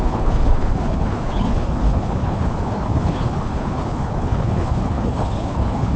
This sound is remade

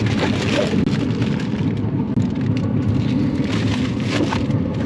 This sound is recorded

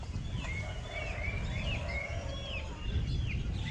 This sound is recorded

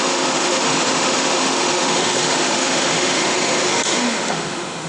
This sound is remade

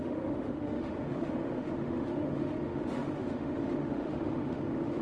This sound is remade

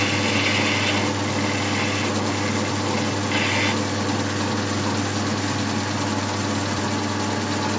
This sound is recorded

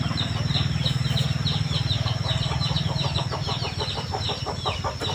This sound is remade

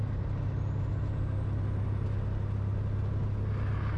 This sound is recorded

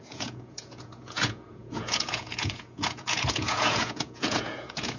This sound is remade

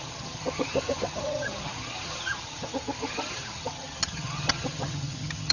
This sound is remade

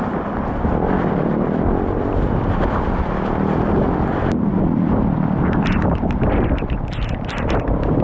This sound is remade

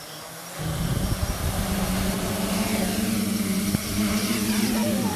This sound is recorded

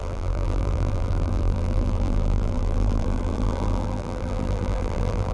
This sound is remade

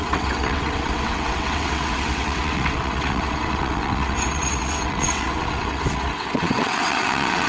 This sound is remade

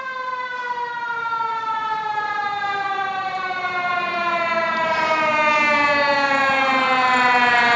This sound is remade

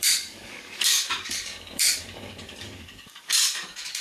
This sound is remade